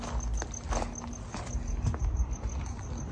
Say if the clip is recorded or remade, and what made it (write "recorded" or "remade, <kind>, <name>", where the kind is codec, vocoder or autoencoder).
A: recorded